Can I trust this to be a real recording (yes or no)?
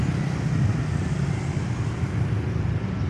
yes